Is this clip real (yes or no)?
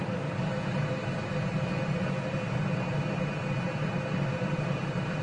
no